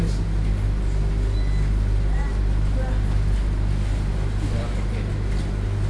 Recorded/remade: recorded